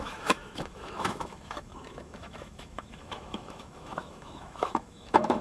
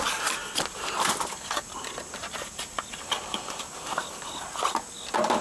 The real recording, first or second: second